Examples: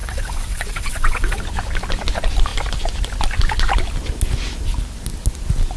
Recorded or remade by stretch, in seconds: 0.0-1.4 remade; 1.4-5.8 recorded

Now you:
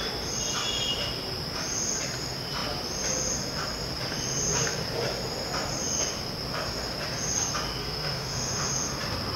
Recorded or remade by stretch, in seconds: 0.0-7.8 recorded; 7.8-8.7 remade; 8.7-9.4 recorded

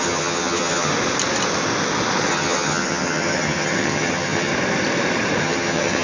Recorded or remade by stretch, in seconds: 0.0-0.9 remade; 0.9-2.3 recorded; 2.3-4.5 remade; 4.5-5.4 recorded; 5.4-6.0 remade

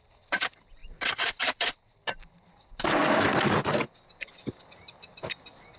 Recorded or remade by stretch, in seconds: 0.0-5.8 recorded

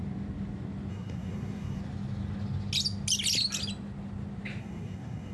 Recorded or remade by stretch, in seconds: 0.0-0.9 recorded; 0.9-1.8 remade; 1.8-4.6 recorded; 4.6-5.3 remade

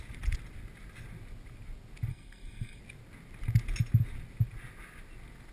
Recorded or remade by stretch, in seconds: 0.0-2.1 recorded; 2.1-2.8 remade; 2.8-5.5 recorded

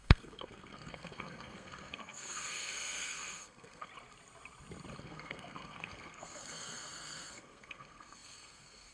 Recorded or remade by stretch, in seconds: 0.0-3.9 remade; 3.9-5.0 recorded; 5.0-8.9 remade

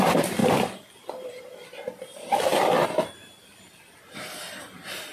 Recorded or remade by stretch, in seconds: 0.0-0.4 recorded; 0.4-1.4 remade; 1.4-5.1 recorded